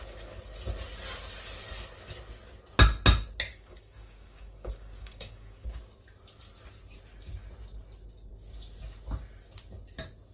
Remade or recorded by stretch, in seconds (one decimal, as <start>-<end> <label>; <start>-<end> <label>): 0.0-3.5 recorded; 3.5-5.8 remade; 5.8-10.3 recorded